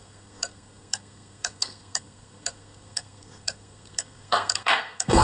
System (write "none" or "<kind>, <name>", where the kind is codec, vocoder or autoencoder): codec, SNAC